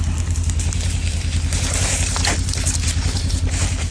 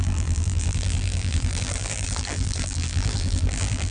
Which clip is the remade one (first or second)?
second